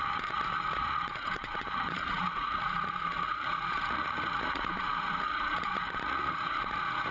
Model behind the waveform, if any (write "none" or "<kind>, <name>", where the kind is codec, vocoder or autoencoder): vocoder, Vocos